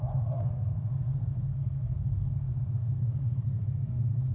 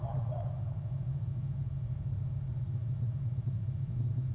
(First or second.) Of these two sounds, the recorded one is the second